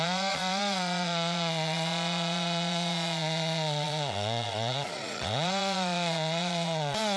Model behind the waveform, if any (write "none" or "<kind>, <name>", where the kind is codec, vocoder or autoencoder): vocoder, Vocos